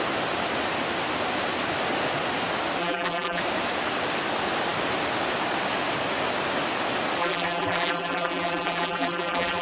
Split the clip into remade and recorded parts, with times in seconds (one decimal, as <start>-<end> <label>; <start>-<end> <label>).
0.0-2.8 recorded; 2.8-3.4 remade; 3.4-7.2 recorded; 7.2-9.6 remade